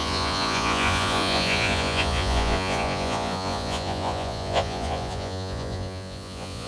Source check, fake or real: fake